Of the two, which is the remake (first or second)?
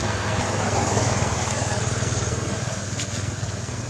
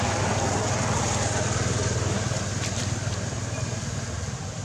first